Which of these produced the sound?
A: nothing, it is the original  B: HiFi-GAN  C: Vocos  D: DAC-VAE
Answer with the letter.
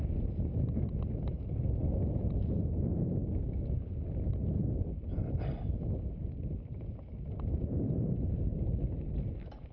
A